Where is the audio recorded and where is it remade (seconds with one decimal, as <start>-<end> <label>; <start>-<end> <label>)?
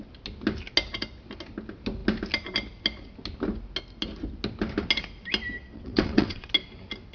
0.0-5.6 recorded; 5.6-6.5 remade; 6.5-7.1 recorded